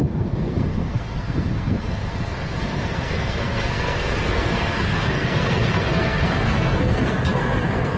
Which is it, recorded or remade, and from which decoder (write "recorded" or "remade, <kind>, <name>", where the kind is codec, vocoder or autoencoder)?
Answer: remade, codec, SNAC